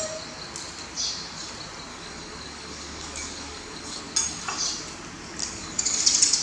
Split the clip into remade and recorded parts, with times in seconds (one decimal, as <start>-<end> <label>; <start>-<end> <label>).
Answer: 0.0-1.9 recorded; 1.9-4.0 remade; 4.0-5.4 recorded; 5.4-6.0 remade; 6.0-6.4 recorded